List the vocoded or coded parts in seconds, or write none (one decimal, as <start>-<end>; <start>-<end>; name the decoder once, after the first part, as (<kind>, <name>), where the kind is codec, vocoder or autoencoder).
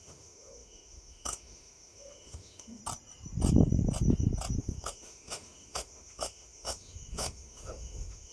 0.0-2.8 (autoencoder, DAC-VAE); 4.6-8.3